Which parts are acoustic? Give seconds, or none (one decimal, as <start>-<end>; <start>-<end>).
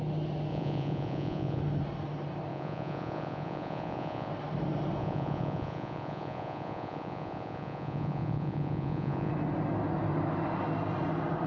0.0-0.5; 1.6-2.5; 4.3-5.0; 9.3-11.5